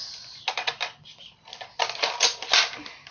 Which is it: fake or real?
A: real